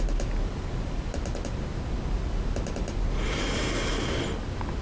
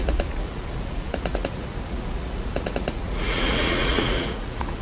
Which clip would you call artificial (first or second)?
second